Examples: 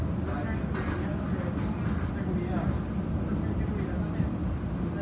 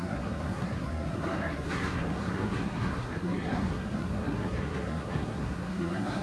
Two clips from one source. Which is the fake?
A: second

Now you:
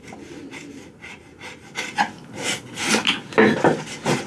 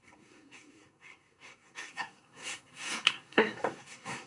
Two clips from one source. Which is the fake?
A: second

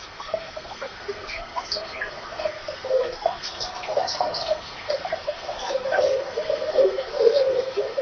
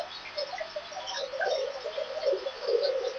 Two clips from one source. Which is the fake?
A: first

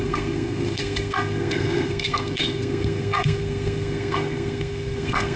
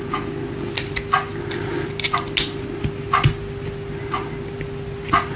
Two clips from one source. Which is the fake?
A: first